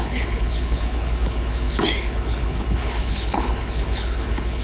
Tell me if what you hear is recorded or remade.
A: remade